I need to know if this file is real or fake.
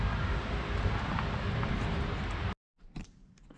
real